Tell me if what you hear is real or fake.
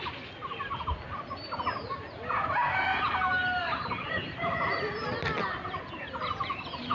real